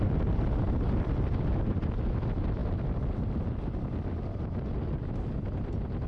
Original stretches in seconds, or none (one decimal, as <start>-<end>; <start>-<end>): 0.0-6.1